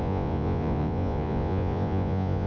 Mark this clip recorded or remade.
remade